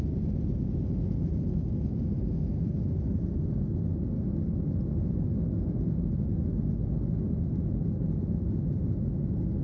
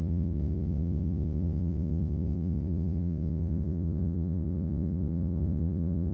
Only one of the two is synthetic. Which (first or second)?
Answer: second